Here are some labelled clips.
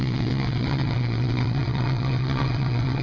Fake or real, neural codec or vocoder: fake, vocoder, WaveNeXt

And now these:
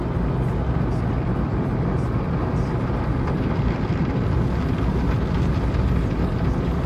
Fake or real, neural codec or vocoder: real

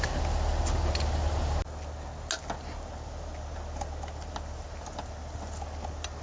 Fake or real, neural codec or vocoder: real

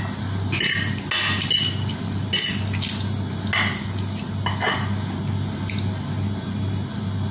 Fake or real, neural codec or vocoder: real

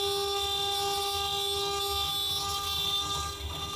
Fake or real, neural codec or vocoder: real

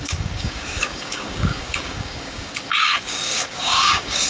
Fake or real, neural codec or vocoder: fake, codec, DAC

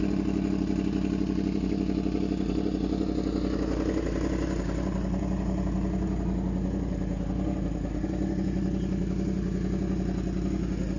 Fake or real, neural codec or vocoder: real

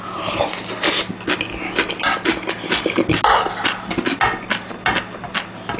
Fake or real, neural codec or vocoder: real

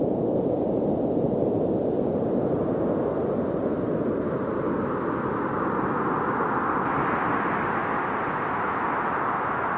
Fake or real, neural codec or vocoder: real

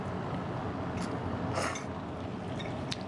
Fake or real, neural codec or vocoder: real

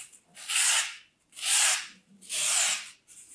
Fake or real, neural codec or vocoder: fake, vocoder, BigVGAN v2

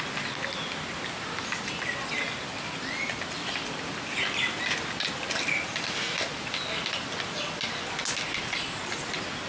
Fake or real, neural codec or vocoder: real